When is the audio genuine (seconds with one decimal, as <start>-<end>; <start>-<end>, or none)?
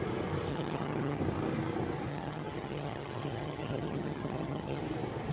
0.0-0.5; 1.2-2.1; 4.8-5.3